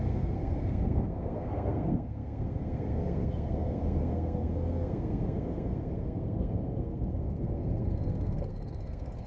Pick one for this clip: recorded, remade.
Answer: remade